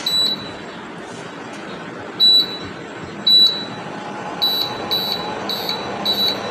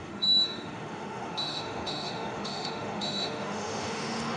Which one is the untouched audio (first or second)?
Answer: first